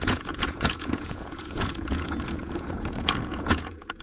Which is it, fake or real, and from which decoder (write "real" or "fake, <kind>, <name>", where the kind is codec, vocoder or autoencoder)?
fake, vocoder, Vocos